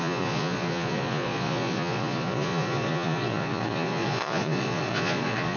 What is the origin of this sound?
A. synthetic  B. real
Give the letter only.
A